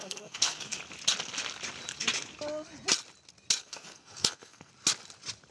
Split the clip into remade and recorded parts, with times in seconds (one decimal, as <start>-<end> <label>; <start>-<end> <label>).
0.0-0.8 remade; 0.8-3.6 recorded; 3.6-4.7 remade; 4.7-5.5 recorded